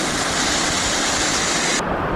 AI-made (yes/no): no